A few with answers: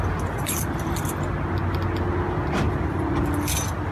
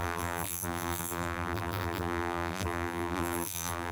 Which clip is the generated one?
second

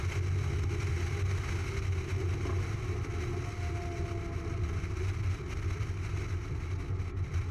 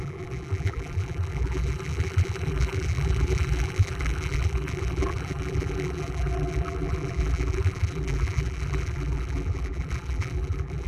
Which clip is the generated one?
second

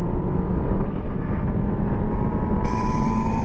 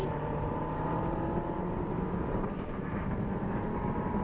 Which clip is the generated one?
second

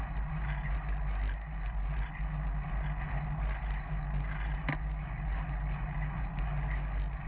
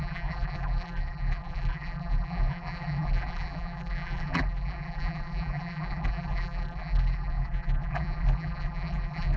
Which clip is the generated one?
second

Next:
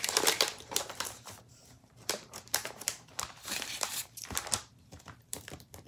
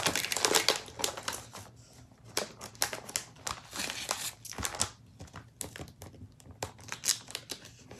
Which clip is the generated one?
first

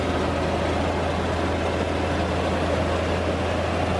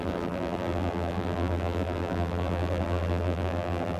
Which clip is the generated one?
second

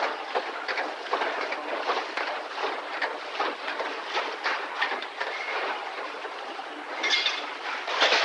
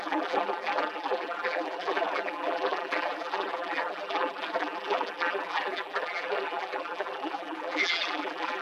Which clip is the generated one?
second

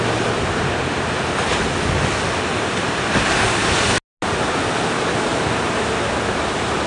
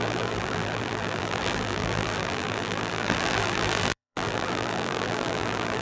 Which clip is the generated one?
second